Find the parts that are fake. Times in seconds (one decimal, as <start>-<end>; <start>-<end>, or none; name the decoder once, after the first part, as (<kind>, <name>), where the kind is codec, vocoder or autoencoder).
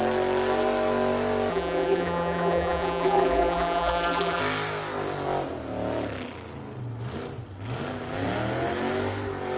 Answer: 1.5-4.4 (vocoder, BigVGAN v2)